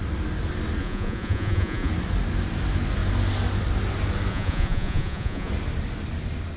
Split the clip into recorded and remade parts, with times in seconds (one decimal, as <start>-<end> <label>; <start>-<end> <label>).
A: 0.0-0.8 recorded; 0.8-1.9 remade; 1.9-4.3 recorded; 4.3-5.5 remade; 5.5-6.6 recorded